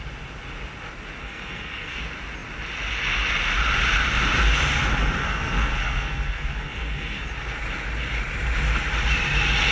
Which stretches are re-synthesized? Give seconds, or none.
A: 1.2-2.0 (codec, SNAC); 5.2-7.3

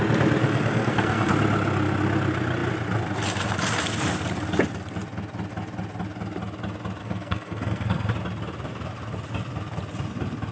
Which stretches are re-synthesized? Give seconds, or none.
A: 0.4-1.3 (codec, SNAC); 7.0-8.1